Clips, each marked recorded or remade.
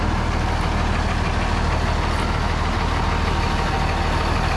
recorded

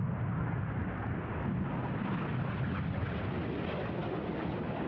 recorded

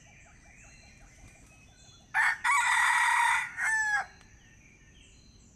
recorded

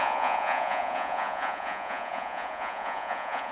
remade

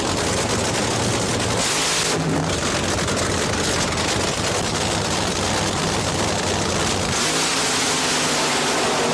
recorded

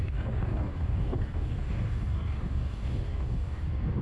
remade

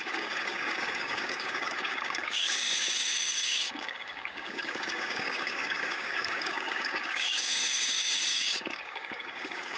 remade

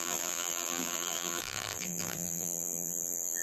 remade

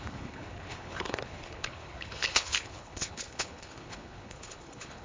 remade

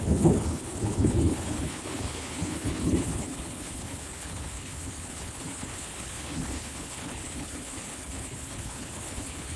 remade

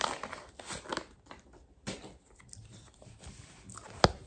recorded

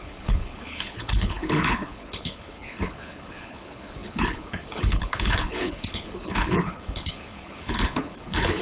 remade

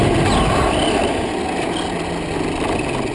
recorded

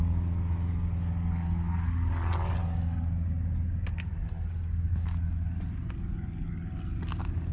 recorded